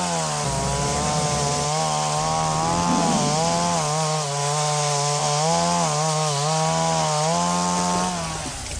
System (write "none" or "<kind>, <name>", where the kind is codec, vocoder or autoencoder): none